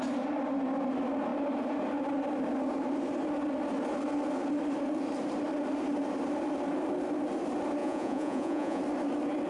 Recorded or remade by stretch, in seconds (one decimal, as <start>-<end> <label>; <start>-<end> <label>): 0.0-7.8 recorded; 7.8-8.8 remade; 8.8-9.5 recorded